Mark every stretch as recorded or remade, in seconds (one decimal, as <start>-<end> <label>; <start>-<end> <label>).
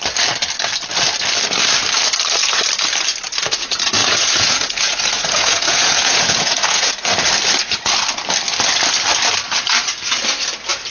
0.0-4.0 recorded; 4.0-6.9 remade; 6.9-10.9 recorded